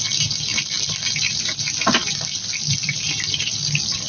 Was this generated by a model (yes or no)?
no